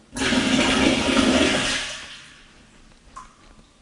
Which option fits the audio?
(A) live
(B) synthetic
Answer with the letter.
A